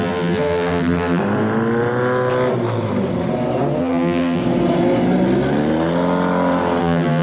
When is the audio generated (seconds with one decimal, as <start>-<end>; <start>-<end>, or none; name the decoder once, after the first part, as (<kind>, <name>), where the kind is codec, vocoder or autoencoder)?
0.0-1.2 (vocoder, BigVGAN v2); 3.8-4.4; 6.8-7.2